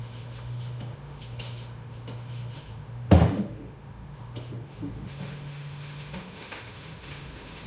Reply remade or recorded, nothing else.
remade